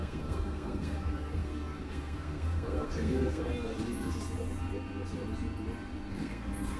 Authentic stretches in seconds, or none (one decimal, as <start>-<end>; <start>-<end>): 3.5-6.1